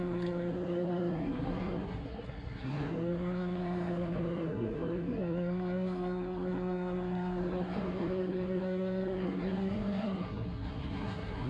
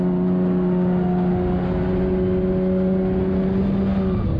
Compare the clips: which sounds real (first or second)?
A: second